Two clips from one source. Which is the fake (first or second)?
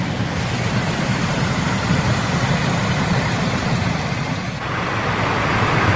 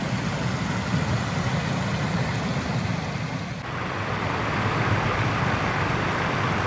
first